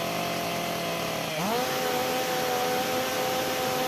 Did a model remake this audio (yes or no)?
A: no